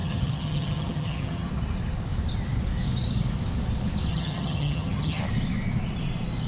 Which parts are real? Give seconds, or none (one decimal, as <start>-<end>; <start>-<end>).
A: 1.5-4.1; 5.2-6.5